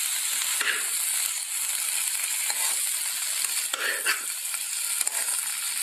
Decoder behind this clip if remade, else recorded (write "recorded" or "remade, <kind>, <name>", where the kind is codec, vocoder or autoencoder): recorded